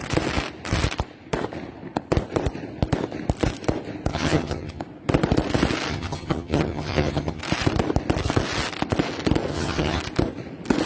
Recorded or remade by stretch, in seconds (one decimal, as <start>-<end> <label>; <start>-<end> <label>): 0.0-4.1 recorded; 4.1-4.8 remade; 4.8-5.9 recorded; 5.9-7.4 remade; 7.4-9.5 recorded; 9.5-10.0 remade; 10.0-10.9 recorded